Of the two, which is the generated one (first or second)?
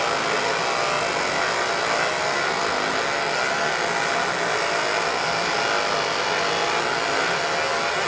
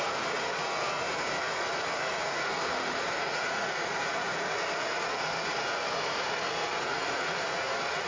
second